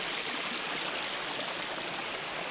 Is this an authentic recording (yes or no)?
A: yes